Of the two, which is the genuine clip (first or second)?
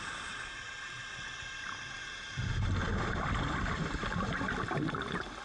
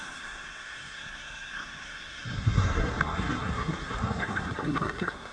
first